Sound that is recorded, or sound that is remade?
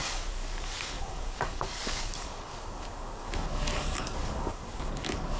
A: remade